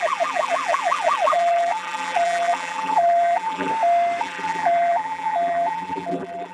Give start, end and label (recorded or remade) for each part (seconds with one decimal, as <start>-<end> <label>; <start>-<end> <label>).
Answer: 0.0-3.7 remade; 3.7-4.2 recorded; 4.2-6.5 remade